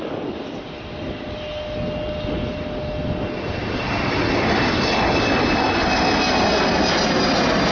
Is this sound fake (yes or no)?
no